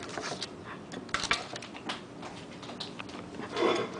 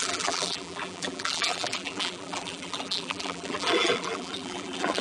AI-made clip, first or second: second